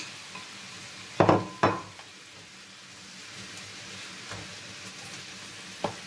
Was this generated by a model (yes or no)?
no